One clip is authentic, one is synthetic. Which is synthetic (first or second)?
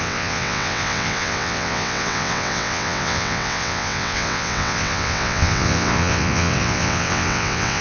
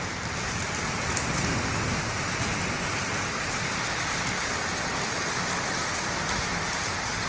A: first